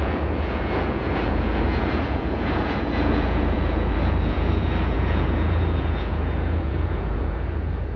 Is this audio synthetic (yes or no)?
yes